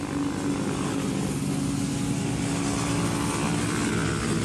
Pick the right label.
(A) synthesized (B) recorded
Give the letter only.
B